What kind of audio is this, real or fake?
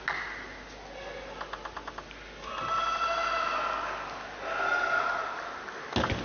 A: real